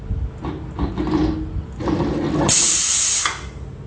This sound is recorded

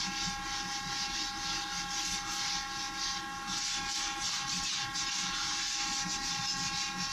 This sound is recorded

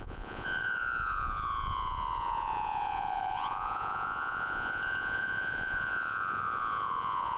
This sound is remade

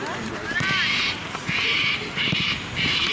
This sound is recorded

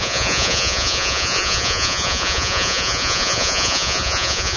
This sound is remade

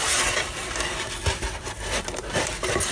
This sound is recorded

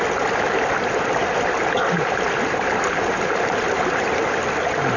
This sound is recorded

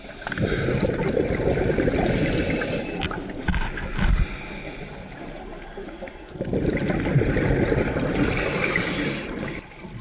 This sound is recorded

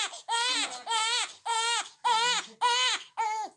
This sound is recorded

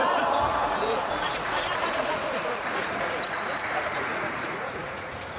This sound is remade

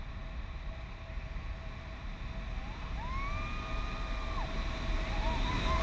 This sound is recorded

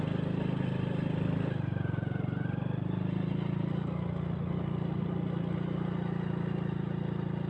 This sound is recorded